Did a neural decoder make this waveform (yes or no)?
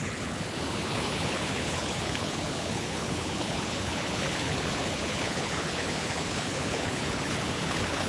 yes